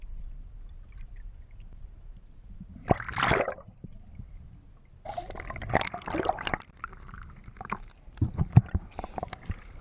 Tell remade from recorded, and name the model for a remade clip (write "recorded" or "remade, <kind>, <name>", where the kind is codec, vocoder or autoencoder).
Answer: recorded